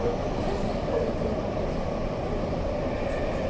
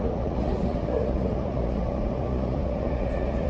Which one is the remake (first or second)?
second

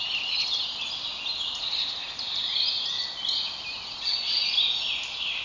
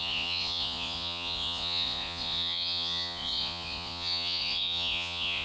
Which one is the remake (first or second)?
second